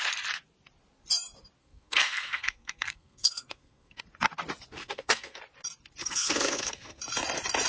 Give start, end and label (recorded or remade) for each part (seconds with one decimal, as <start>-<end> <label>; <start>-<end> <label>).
0.0-1.6 recorded; 1.6-4.0 remade; 4.0-4.8 recorded; 4.8-5.4 remade; 5.4-6.0 recorded; 6.0-7.0 remade; 7.0-7.7 recorded